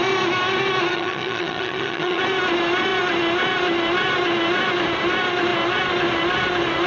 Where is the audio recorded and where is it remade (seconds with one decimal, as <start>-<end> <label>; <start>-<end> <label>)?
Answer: 0.0-0.9 recorded; 0.9-2.2 remade; 2.2-6.9 recorded